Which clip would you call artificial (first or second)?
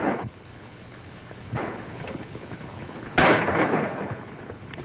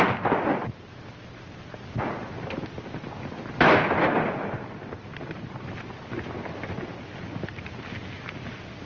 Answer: first